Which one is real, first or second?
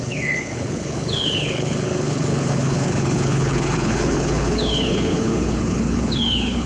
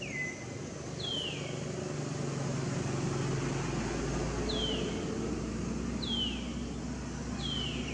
second